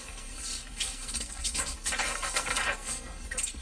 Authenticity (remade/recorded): remade